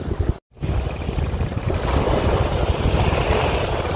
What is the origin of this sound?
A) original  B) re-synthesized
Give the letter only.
A